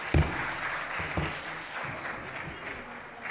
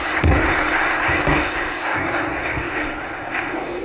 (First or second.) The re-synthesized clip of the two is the second